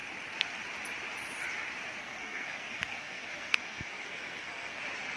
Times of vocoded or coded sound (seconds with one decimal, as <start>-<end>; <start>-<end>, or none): 2.0-4.8